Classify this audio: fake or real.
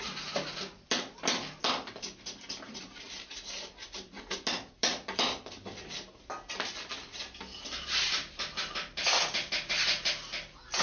real